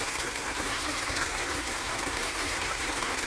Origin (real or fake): fake